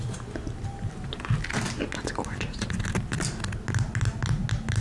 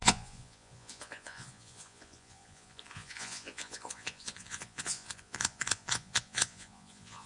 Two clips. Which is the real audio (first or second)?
first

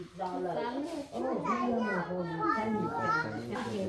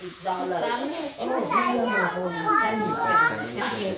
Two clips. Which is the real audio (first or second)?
first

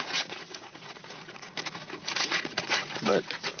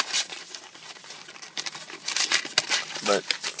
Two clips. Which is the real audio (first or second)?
second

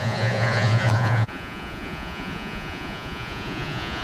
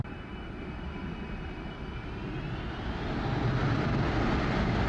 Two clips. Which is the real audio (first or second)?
second